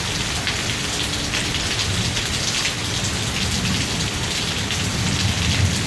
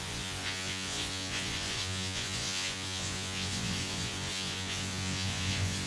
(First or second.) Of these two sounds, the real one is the first